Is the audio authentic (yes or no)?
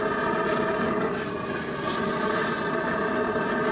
yes